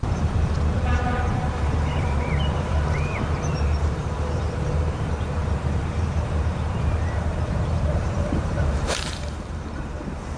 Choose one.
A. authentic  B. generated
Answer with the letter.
B